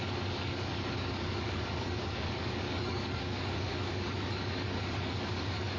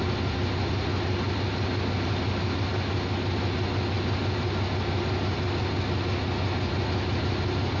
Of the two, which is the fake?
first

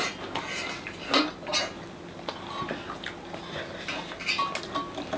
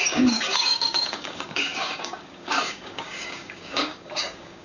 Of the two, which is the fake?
second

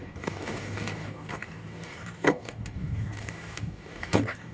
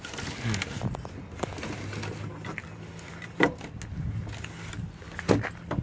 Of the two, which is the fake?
first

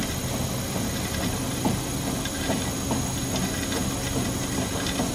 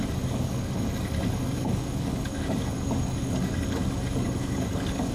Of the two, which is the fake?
second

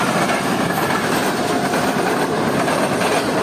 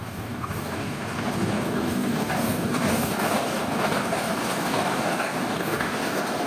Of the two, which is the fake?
second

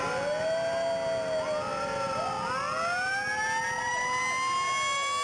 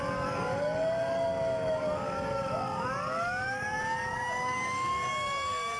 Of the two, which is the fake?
second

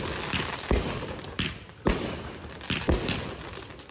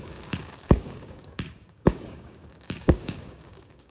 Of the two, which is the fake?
second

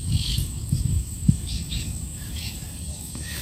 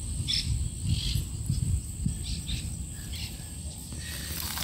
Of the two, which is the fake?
first